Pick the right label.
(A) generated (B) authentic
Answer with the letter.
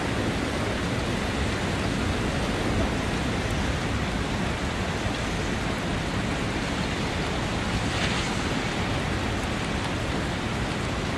B